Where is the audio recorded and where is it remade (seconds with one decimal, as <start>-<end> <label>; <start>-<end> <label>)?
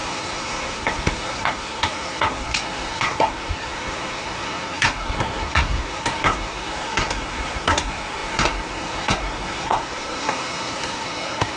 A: 0.0-11.6 remade